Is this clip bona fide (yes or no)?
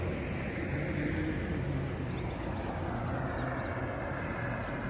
yes